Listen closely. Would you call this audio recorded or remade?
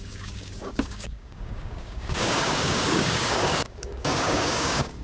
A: remade